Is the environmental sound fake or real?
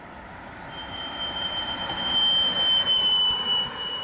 fake